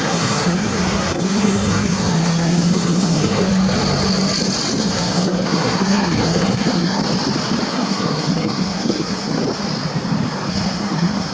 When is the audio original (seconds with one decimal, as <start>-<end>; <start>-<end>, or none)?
3.5-4.8; 7.0-7.7; 9.4-10.5